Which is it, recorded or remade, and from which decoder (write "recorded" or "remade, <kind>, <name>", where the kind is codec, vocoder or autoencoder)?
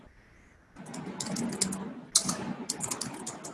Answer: recorded